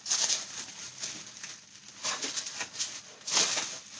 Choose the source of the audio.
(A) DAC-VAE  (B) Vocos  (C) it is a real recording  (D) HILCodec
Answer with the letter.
C